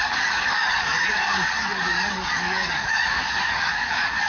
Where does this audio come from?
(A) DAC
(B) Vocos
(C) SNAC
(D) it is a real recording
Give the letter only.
A